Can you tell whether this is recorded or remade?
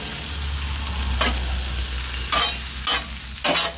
recorded